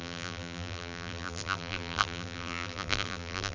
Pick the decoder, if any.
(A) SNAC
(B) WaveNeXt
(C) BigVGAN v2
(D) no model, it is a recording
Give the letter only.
C